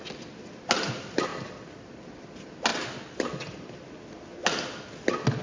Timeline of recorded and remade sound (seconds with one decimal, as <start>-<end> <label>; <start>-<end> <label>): 0.0-1.3 recorded; 1.3-2.1 remade; 2.1-5.4 recorded